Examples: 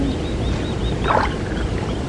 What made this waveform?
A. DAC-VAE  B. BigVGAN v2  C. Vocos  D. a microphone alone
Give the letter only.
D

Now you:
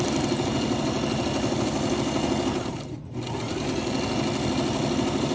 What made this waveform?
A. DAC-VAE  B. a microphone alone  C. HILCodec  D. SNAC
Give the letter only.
B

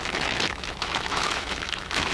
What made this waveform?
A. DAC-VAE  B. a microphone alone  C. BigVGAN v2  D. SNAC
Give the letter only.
A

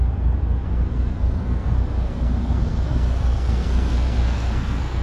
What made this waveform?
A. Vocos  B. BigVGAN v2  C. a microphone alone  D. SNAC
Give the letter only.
D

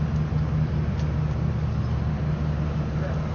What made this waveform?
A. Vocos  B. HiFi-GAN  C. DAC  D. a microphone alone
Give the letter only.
D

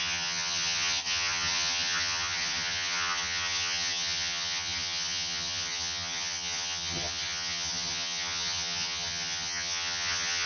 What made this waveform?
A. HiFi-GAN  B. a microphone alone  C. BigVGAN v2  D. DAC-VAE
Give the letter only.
A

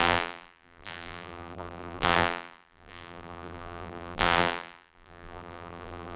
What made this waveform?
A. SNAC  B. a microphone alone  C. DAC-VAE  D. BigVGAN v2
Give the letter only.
D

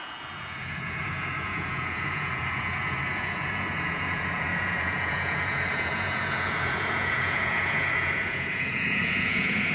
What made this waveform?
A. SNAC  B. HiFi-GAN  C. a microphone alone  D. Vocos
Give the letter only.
D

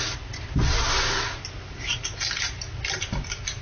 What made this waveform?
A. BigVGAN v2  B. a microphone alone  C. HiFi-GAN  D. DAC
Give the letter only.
B